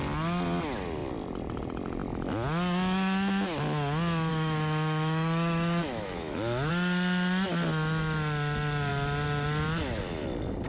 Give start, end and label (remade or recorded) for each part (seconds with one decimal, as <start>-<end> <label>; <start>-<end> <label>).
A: 0.0-4.3 recorded; 4.3-6.7 remade; 6.7-10.7 recorded